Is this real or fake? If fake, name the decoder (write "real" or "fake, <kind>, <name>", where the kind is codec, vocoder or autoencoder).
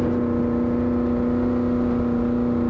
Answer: real